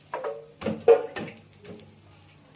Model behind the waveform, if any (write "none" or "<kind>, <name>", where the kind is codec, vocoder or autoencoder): none